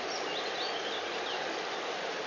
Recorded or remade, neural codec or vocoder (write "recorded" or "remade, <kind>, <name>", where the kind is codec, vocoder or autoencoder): recorded